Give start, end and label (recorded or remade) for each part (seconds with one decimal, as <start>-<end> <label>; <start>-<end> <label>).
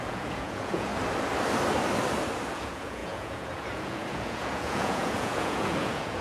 0.0-0.9 remade; 0.9-2.5 recorded; 2.5-6.2 remade